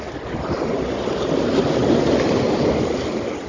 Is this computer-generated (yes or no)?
no